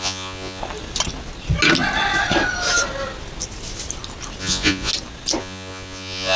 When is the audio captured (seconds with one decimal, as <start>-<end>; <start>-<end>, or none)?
0.6-4.4; 4.9-5.4